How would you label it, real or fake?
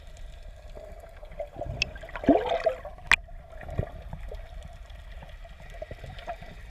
real